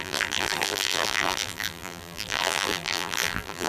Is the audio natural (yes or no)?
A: no